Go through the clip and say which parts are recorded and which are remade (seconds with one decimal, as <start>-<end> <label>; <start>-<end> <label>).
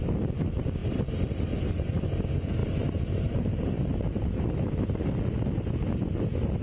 0.0-0.8 recorded; 0.8-2.0 remade; 2.0-2.6 recorded; 2.6-5.4 remade; 5.4-6.6 recorded